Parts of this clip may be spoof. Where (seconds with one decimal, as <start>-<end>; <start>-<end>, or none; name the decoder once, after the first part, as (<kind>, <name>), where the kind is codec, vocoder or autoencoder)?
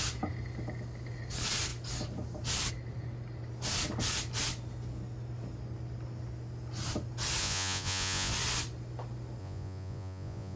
7.4-8.3 (vocoder, Vocos); 9.4-10.6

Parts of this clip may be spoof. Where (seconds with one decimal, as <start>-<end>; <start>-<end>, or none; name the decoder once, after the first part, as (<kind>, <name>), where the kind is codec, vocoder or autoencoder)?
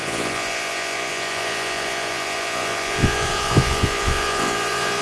0.0-5.0 (vocoder, Vocos)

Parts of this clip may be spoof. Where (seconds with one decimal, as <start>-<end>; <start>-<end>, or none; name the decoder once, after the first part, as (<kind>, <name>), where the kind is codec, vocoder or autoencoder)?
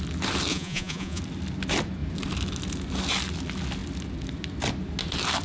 0.5-1.2 (vocoder, Vocos)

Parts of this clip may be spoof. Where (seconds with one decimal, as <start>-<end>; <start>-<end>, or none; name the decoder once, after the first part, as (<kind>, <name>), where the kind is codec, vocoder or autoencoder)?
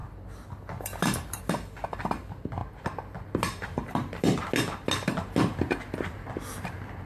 none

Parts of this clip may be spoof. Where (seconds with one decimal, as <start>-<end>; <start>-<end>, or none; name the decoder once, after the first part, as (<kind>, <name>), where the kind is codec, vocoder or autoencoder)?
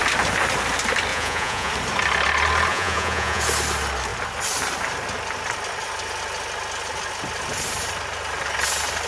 1.1-1.7 (vocoder, Vocos); 2.7-3.4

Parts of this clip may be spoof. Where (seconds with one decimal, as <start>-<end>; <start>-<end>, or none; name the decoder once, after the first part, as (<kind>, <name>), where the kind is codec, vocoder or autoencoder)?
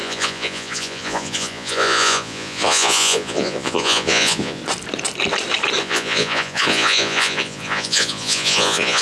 0.0-4.6 (vocoder, Vocos); 5.8-9.0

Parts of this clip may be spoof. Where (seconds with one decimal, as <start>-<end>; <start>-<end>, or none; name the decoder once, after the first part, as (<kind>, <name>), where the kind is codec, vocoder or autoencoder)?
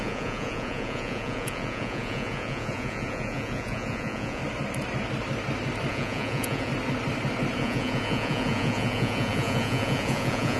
0.0-4.4 (vocoder, Vocos); 5.9-6.7; 7.6-10.6